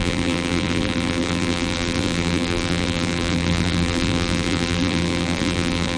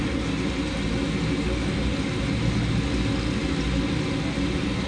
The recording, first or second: second